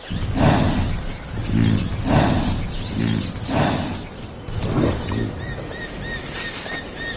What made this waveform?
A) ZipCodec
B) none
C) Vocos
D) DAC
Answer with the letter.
B